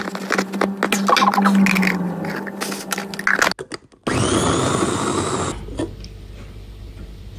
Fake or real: real